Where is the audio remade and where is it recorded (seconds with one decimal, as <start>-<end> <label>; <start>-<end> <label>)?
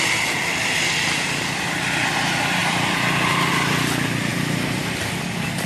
0.0-2.6 recorded; 2.6-3.5 remade; 3.5-5.7 recorded